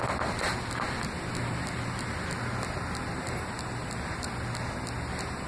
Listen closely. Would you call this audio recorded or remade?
recorded